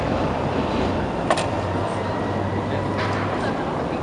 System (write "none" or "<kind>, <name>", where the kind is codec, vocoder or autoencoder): none